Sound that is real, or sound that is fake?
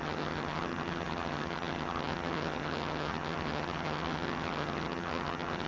fake